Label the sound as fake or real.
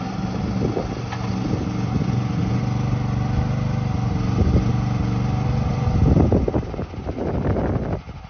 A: real